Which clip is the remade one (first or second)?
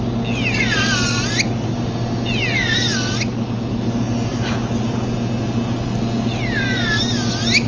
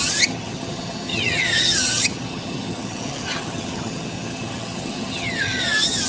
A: second